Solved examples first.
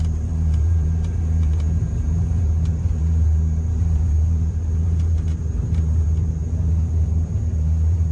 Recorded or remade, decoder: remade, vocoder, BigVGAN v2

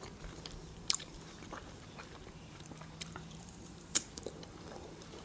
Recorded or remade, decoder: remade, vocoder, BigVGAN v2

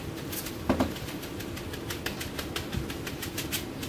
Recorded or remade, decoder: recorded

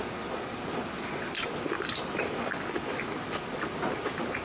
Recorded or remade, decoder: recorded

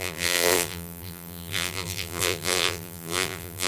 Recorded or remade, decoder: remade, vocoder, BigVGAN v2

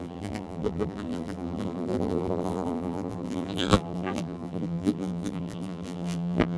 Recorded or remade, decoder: remade, vocoder, BigVGAN v2